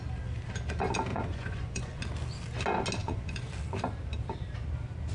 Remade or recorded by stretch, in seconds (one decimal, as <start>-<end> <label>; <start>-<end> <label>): 0.0-1.1 recorded; 1.1-2.0 remade; 2.0-3.0 recorded; 3.0-3.5 remade; 3.5-5.1 recorded